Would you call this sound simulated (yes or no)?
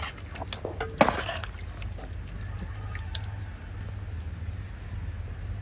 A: no